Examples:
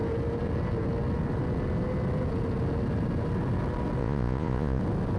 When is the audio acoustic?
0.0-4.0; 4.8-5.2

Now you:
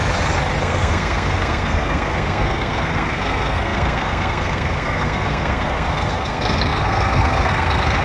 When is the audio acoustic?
0.0-0.6

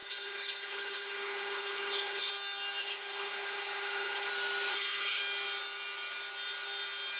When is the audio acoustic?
2.3-2.8; 4.3-4.7; 5.2-7.2

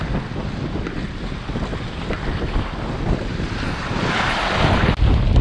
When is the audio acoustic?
0.0-5.4

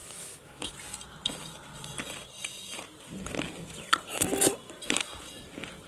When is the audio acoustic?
0.7-5.9

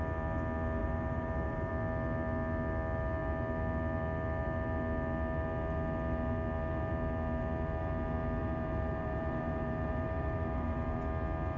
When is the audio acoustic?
0.0-0.8; 1.7-8.4; 11.0-11.6

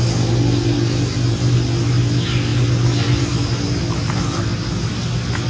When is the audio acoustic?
0.0-5.5